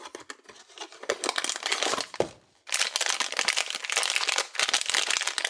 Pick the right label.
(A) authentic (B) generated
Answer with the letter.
A